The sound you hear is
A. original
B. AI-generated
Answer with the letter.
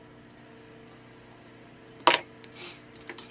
A